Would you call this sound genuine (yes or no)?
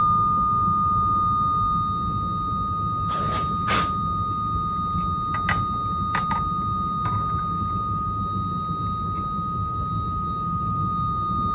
yes